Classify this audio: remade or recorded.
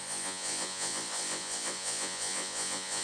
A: remade